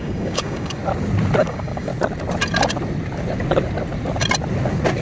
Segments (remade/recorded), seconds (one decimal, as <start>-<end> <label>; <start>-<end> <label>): 0.0-0.8 remade; 0.8-1.4 recorded; 1.4-1.9 remade; 1.9-5.0 recorded